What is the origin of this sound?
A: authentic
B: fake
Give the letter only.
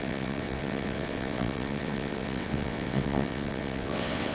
B